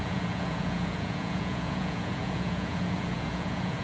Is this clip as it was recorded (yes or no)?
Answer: no